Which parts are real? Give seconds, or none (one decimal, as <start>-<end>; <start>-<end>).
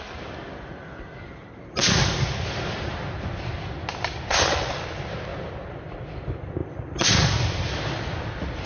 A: 0.0-6.6